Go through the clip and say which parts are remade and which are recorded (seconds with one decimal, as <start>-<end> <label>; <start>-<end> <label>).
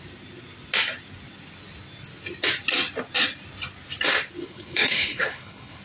0.0-4.4 recorded; 4.4-5.8 remade